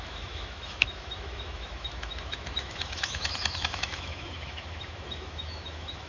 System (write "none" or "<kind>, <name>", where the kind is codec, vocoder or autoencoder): autoencoder, DAC-VAE